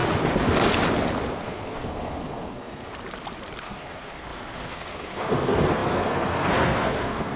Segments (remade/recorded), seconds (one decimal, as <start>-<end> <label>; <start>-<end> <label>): 0.0-1.3 recorded; 1.3-2.9 remade; 2.9-3.6 recorded; 3.6-7.4 remade